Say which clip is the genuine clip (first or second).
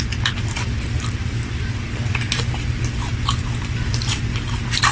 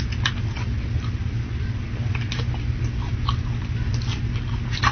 second